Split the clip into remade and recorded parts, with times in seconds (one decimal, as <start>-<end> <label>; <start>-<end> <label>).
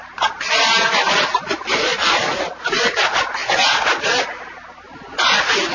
0.0-1.6 recorded; 1.6-2.8 remade; 2.8-5.7 recorded